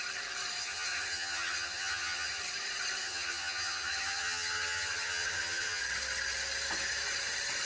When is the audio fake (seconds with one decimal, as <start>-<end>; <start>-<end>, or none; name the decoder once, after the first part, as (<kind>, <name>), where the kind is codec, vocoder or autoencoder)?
0.6-2.4 (vocoder, HiFi-GAN); 3.0-5.8

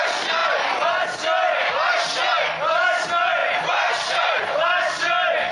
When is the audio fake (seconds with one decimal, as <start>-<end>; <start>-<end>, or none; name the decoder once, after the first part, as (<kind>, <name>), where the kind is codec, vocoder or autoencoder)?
3.4-4.2 (vocoder, BigVGAN v2)